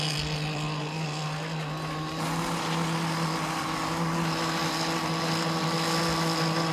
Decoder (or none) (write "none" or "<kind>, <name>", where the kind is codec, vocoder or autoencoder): none